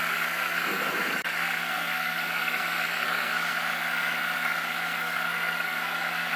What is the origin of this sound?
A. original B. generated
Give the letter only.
B